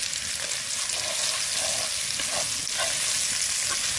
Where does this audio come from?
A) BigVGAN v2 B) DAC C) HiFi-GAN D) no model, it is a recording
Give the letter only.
D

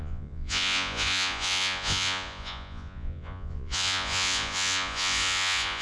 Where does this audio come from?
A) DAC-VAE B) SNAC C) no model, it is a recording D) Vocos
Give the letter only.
D